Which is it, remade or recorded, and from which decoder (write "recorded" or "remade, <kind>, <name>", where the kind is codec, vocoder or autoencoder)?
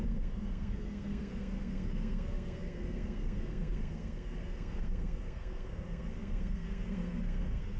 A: remade, codec, SNAC